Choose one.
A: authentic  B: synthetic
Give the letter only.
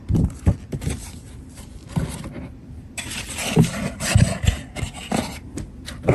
B